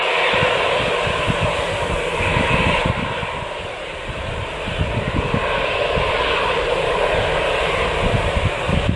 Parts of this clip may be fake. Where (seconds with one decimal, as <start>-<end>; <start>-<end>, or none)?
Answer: none